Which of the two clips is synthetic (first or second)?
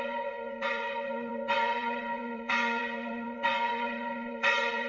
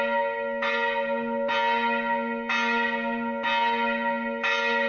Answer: first